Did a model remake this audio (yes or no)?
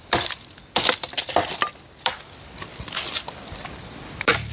no